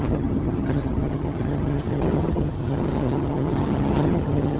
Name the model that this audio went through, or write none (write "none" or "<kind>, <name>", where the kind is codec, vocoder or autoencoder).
vocoder, HiFi-GAN